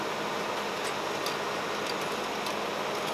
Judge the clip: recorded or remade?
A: recorded